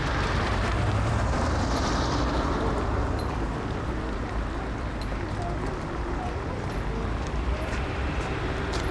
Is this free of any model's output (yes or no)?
no